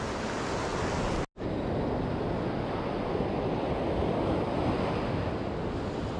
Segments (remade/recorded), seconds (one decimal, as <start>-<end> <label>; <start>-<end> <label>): 0.0-6.2 recorded